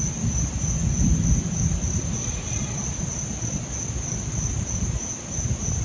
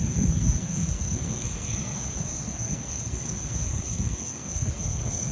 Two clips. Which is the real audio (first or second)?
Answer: first